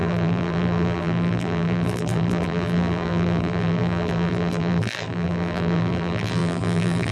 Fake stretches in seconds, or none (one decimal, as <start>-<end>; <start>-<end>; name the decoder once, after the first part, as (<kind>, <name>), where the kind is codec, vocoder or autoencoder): 0.0-7.1 (vocoder, BigVGAN v2)